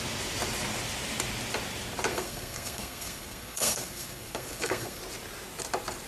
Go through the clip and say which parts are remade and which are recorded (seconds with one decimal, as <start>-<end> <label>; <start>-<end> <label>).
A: 0.0-2.1 recorded; 2.1-5.0 remade; 5.0-6.1 recorded